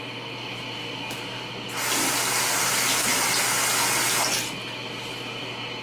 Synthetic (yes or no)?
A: no